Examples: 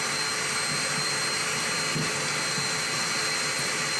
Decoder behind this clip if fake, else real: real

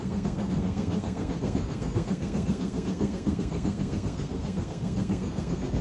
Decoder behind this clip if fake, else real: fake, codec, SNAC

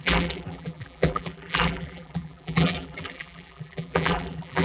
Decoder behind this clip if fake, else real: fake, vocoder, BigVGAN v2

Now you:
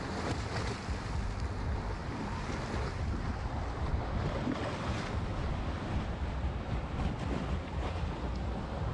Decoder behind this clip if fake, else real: real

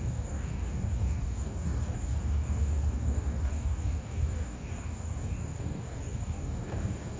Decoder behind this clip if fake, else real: fake, codec, DAC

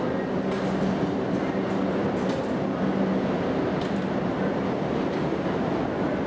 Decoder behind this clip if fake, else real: real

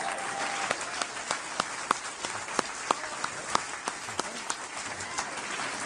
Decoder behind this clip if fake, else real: real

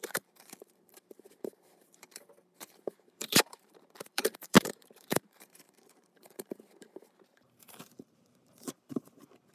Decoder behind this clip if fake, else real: fake, vocoder, BigVGAN v2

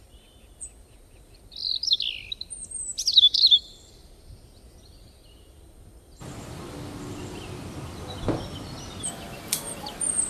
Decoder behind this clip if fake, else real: fake, vocoder, BigVGAN v2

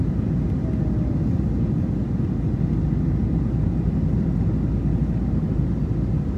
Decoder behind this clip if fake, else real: real